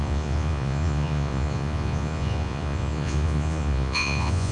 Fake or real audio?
fake